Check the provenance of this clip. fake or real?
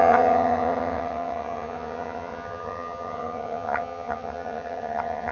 fake